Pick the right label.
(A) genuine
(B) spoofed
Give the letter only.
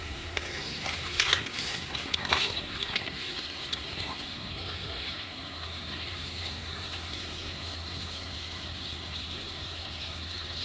B